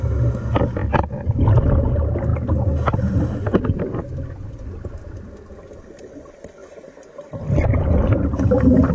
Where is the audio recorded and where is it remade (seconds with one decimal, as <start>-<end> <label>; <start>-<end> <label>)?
0.0-8.9 recorded